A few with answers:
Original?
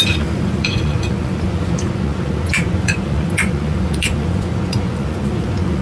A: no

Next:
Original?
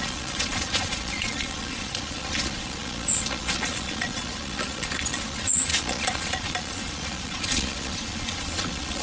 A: no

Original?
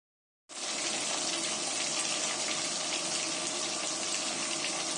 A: yes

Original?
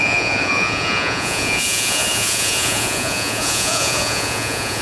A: no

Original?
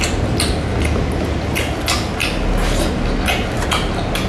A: yes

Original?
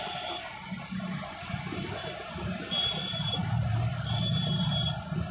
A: yes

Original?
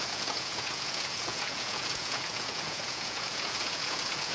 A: no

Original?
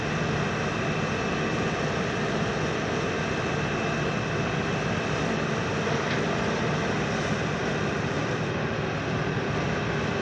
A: yes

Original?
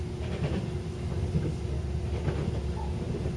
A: yes